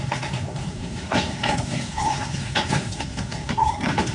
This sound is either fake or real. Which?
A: fake